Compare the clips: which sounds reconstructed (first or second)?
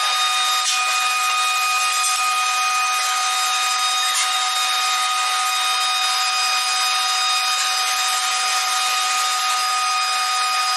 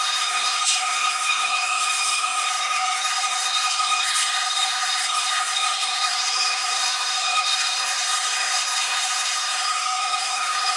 second